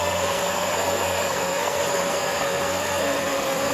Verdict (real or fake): fake